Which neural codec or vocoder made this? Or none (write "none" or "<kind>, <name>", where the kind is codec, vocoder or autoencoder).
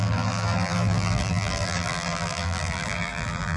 vocoder, BigVGAN v2